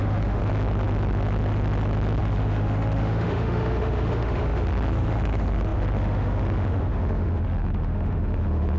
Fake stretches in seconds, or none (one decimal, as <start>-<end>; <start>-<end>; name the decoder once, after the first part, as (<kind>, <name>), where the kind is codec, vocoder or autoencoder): 0.0-0.4 (autoencoder, DAC-VAE); 2.2-8.8